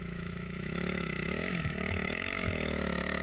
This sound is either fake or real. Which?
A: fake